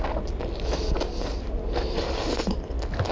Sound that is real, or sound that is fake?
real